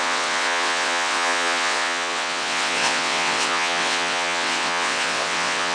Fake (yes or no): yes